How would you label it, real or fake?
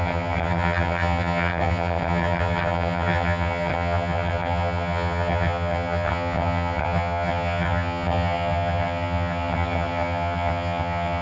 fake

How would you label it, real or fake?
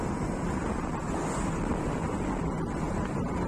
real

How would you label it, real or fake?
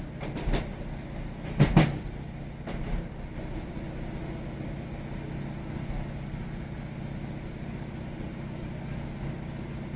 real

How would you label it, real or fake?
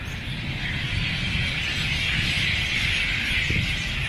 real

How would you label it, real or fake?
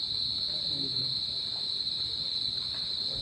real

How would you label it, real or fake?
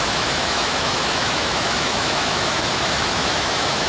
fake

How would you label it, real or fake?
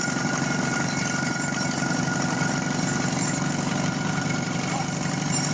fake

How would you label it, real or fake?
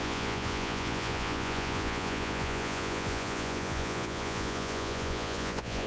fake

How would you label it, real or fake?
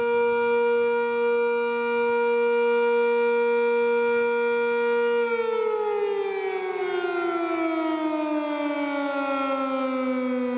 real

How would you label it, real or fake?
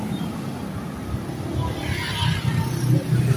real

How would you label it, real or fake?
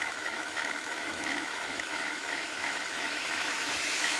fake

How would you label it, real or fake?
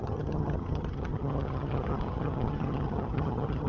fake